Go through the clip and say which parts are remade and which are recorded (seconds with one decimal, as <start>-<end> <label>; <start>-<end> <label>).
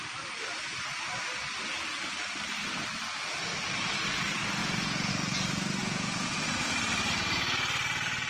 0.0-4.6 recorded; 4.6-5.1 remade; 5.1-5.8 recorded; 5.8-6.7 remade; 6.7-8.3 recorded